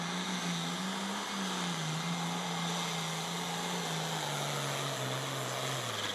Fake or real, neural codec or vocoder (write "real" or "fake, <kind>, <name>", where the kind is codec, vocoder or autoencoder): real